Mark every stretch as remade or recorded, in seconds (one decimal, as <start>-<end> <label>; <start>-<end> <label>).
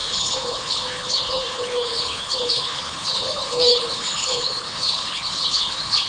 0.0-6.1 remade